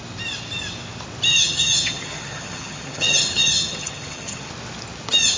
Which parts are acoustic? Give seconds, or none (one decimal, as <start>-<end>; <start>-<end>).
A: 0.0-1.3; 4.5-5.4